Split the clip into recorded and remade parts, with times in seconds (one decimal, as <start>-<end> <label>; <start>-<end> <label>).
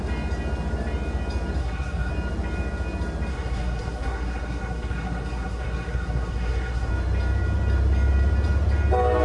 0.0-1.6 recorded; 1.6-2.1 remade; 2.1-3.3 recorded; 3.3-6.9 remade; 6.9-9.2 recorded